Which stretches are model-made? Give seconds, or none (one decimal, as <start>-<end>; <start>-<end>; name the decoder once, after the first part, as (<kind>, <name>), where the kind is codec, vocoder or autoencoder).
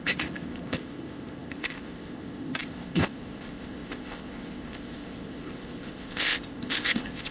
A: 0.0-7.3 (codec, ZipCodec)